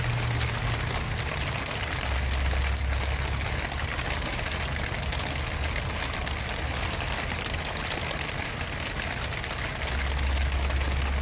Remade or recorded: recorded